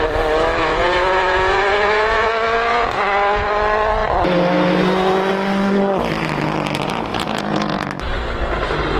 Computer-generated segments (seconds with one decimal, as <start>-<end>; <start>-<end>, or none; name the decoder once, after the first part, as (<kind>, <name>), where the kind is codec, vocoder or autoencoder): 0.6-2.3 (vocoder, Vocos); 2.7-3.5; 7.1-7.9